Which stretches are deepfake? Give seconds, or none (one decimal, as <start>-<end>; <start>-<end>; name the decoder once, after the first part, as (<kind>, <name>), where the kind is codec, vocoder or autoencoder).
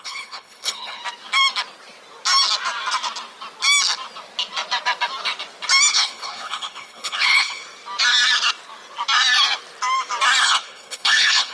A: 0.0-1.0 (codec, HILCodec); 5.9-7.6; 10.4-11.5